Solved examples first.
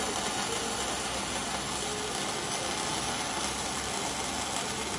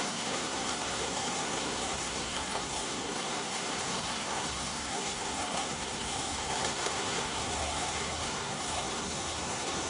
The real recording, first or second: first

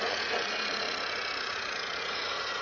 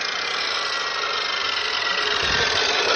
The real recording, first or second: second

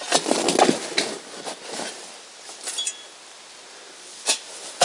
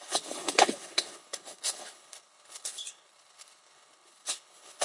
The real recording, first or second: first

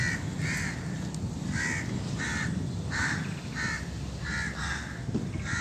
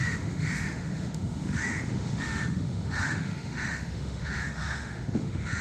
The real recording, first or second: first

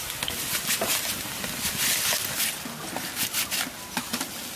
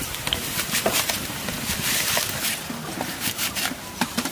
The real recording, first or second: first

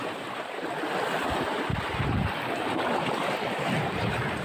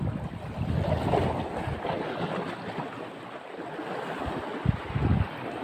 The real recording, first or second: second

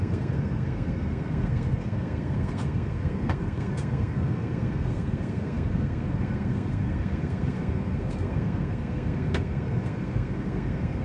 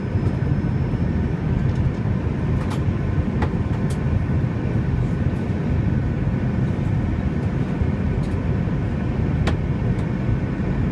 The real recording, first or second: second